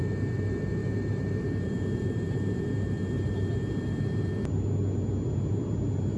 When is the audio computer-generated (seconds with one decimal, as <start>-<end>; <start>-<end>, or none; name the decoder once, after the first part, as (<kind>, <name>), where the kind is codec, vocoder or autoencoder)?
0.8-4.3 (vocoder, BigVGAN v2)